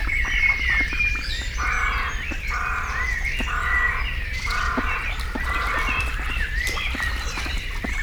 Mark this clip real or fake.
fake